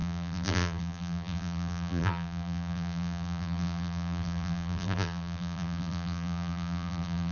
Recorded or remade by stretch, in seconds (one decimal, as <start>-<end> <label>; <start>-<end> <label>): 0.0-7.3 remade